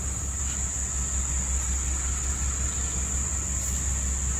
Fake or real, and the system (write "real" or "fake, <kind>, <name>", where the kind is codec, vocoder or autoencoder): real